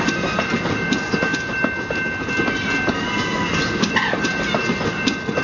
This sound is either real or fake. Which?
real